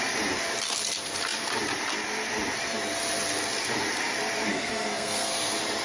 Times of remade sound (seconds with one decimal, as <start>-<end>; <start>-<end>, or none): 4.5-5.3